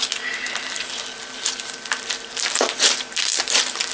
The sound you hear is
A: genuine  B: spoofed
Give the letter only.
A